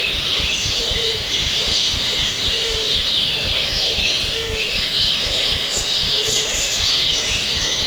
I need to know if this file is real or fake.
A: fake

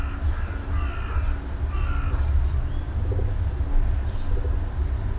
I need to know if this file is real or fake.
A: real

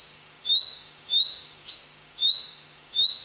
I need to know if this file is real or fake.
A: fake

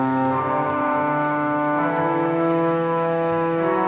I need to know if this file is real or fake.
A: fake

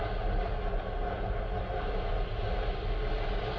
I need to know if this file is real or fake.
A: real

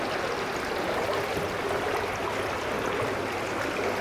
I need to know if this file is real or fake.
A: real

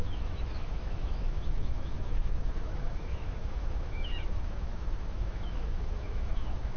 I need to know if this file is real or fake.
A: fake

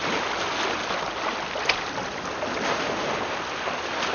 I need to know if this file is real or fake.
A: real